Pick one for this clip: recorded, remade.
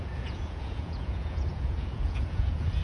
remade